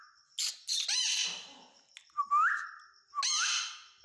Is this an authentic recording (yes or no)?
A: yes